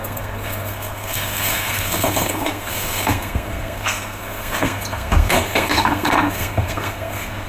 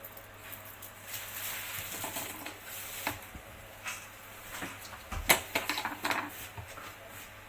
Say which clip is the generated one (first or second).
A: first